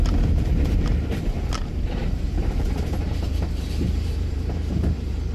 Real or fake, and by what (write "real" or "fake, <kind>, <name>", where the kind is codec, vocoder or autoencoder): fake, vocoder, BigVGAN v2